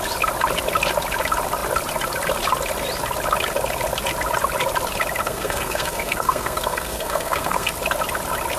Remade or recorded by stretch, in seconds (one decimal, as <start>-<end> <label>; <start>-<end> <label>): 0.0-5.2 recorded; 5.2-7.7 remade; 7.7-8.6 recorded